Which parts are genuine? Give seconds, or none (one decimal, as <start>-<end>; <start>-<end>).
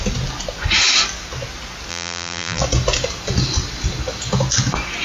0.0-1.9; 2.6-5.0